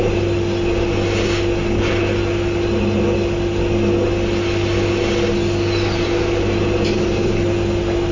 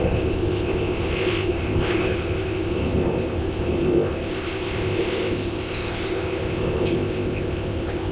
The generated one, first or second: second